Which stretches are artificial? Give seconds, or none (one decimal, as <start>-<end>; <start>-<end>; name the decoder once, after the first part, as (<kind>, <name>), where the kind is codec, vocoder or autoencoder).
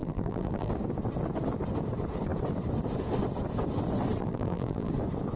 0.0-0.7 (vocoder, BigVGAN v2); 4.2-4.9